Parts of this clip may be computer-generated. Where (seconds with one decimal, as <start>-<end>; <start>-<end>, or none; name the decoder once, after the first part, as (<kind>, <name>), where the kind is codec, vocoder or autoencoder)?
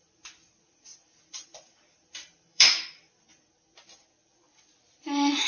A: 0.9-3.2 (vocoder, BigVGAN v2)